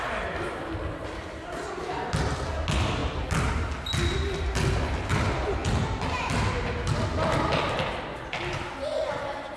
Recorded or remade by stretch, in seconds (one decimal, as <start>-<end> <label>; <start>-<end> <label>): 0.0-9.6 recorded